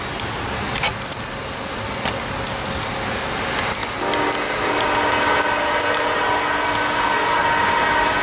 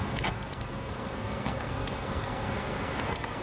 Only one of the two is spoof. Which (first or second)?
second